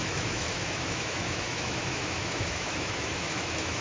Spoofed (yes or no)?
yes